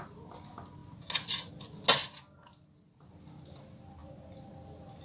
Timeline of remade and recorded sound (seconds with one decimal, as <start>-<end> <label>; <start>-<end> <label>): 0.0-5.0 recorded